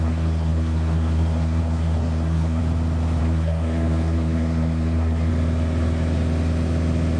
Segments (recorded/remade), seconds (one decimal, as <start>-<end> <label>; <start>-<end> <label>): 0.0-2.6 remade; 2.6-3.2 recorded; 3.2-5.3 remade; 5.3-7.2 recorded

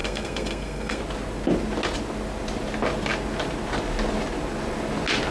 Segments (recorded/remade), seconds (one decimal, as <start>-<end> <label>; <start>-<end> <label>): 0.0-1.0 remade; 1.0-5.3 recorded

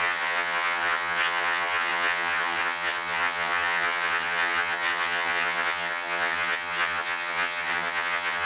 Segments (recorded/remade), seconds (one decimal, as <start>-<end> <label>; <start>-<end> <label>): 0.0-8.5 remade

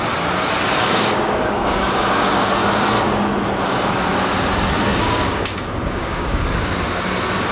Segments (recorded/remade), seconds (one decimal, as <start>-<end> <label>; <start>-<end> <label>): 0.0-0.8 recorded; 0.8-2.5 remade; 2.5-4.9 recorded; 4.9-6.7 remade; 6.7-7.5 recorded